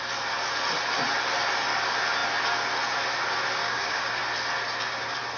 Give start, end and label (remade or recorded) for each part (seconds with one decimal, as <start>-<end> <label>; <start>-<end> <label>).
0.0-3.6 recorded; 3.6-4.2 remade; 4.2-5.4 recorded